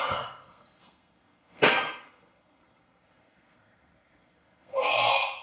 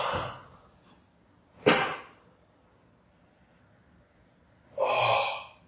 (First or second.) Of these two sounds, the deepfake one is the first